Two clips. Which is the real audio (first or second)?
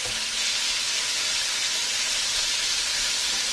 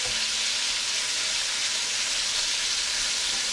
second